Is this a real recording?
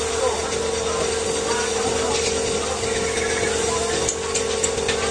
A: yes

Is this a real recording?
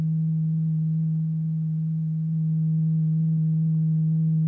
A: yes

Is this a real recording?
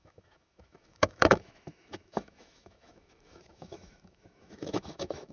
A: no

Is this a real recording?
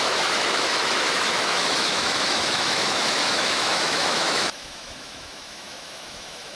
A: no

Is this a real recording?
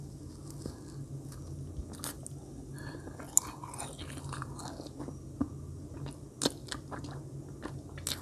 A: yes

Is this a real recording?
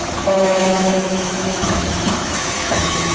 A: no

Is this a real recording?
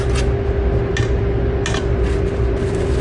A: yes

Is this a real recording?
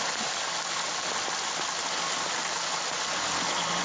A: yes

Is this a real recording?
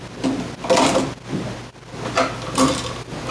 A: yes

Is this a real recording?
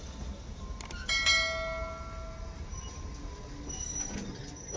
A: yes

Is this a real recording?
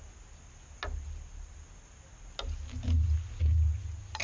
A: yes